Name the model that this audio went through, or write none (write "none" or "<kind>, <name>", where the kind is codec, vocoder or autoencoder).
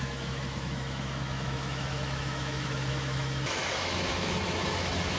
autoencoder, DAC-VAE